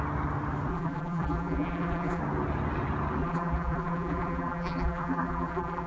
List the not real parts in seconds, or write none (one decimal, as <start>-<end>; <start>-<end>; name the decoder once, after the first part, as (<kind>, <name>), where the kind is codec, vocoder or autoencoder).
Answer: 0.7-2.2 (vocoder, BigVGAN v2); 3.2-5.9